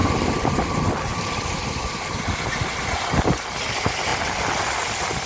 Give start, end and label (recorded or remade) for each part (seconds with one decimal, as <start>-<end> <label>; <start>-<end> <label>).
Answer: 0.0-0.6 remade; 0.6-1.1 recorded; 1.1-2.4 remade; 2.4-5.3 recorded